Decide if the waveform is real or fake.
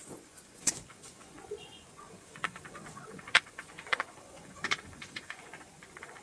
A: fake